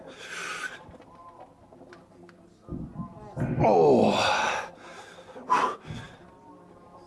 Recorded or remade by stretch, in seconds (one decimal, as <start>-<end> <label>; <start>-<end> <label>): 0.0-7.1 recorded

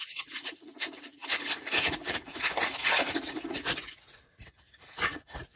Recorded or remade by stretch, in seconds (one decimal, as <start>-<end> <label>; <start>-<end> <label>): 0.0-5.6 remade

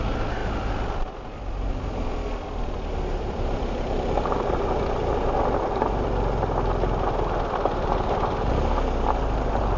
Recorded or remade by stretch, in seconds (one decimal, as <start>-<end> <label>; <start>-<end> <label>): 0.0-9.8 recorded

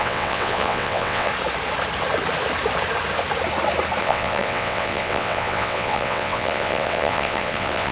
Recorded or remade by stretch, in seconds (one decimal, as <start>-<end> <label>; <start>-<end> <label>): 0.0-1.3 remade; 1.3-4.0 recorded; 4.0-7.9 remade